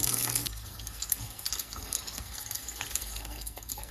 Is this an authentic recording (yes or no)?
no